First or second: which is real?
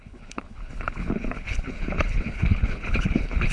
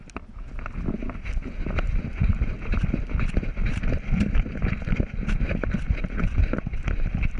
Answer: second